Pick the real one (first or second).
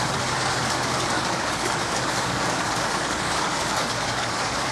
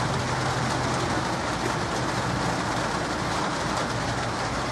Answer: second